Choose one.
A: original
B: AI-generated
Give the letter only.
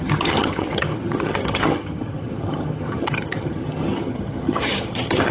B